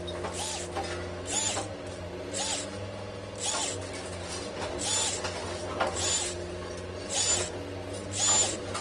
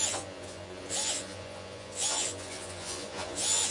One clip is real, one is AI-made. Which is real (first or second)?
first